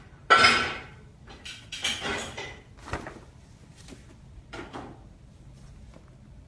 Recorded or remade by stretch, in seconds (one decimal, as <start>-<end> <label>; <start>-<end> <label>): 0.0-1.8 recorded; 1.8-2.7 remade; 2.7-3.7 recorded; 3.7-5.9 remade; 5.9-6.5 recorded